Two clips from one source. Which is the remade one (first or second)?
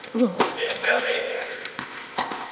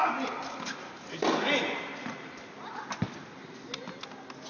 first